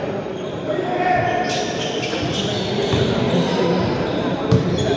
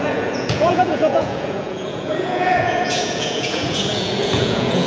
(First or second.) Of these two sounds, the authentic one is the first